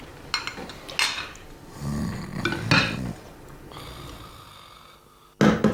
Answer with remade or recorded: recorded